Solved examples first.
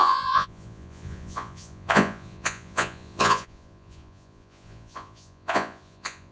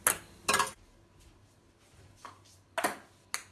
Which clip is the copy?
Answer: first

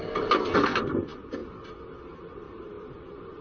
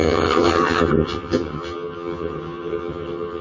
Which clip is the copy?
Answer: second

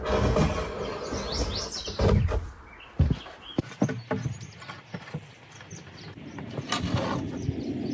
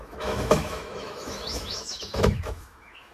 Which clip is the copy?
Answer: second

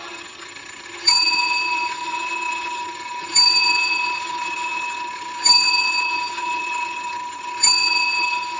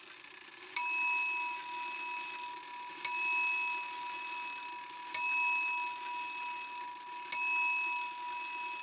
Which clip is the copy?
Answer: first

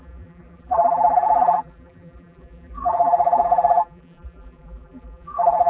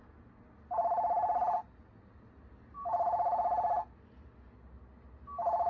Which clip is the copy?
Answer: first